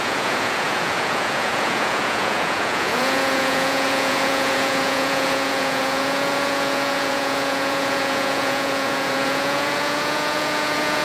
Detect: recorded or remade remade